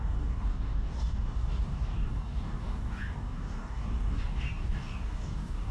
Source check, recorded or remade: remade